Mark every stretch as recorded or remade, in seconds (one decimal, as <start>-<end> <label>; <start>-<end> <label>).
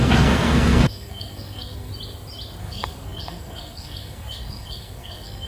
0.0-1.9 remade; 1.9-2.6 recorded; 2.6-5.5 remade